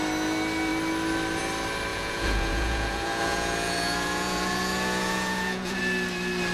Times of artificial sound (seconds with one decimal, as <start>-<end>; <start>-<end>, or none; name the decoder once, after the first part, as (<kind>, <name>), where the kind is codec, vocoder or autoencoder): 1.9-5.8 (vocoder, Vocos)